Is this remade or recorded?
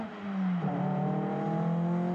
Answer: recorded